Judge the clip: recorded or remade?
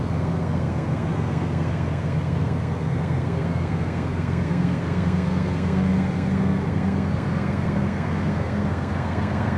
remade